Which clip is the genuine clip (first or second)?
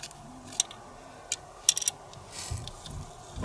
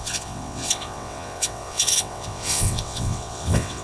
first